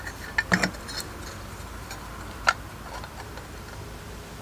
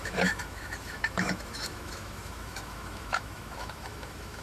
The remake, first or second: second